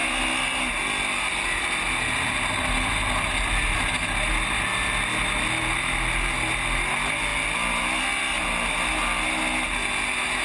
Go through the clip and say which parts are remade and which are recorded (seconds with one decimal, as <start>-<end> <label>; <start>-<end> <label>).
0.0-10.4 recorded